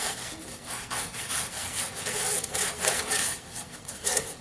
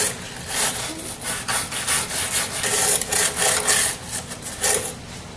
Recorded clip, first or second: second